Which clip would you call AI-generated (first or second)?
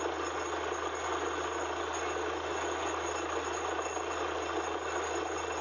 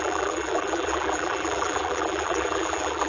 second